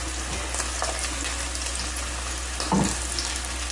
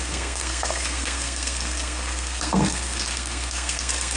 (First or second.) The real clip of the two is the first